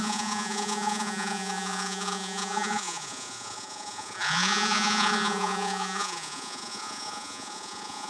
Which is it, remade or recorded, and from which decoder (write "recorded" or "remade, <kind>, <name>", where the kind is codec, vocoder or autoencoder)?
remade, vocoder, Vocos